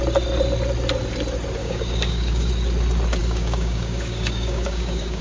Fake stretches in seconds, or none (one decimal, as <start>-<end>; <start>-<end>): 1.6-2.5; 3.2-5.2